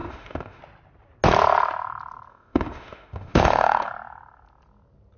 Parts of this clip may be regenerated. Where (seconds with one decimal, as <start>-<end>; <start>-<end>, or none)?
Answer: 0.0-0.6; 2.3-3.9